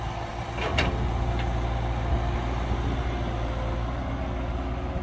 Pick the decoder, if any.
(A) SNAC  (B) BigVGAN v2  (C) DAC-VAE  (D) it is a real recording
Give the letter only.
D